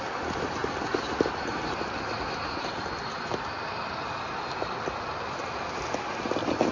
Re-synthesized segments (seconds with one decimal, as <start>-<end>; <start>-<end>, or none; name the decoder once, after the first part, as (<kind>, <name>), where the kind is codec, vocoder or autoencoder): none